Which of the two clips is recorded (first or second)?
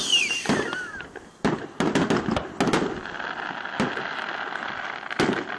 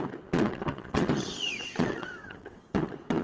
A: first